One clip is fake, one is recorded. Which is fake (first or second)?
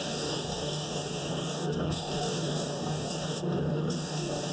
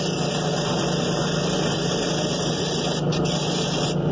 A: first